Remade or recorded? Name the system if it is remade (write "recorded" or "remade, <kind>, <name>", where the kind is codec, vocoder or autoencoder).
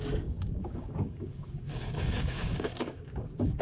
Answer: remade, codec, DAC